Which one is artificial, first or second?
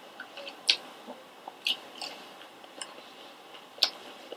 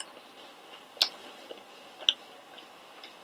first